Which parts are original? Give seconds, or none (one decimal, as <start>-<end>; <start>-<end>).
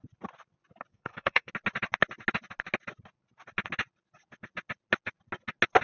0.0-0.9; 1.5-5.8